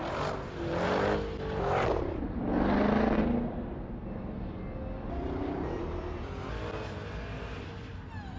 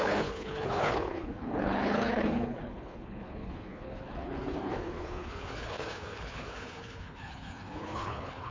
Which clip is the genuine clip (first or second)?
first